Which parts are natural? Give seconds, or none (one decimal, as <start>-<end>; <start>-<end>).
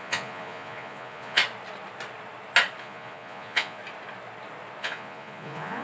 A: 1.4-2.8; 3.8-4.8